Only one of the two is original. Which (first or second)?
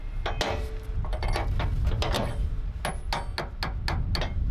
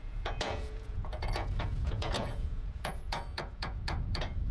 first